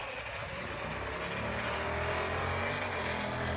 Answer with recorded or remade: recorded